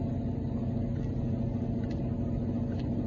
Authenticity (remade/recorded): recorded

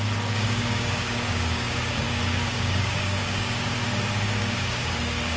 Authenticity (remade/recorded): remade